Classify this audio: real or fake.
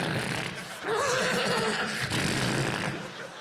real